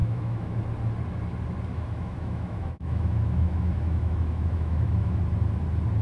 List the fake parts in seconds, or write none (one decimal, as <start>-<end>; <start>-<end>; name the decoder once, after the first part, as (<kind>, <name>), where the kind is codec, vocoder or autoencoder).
0.0-0.6 (autoencoder, DAC-VAE); 1.7-5.2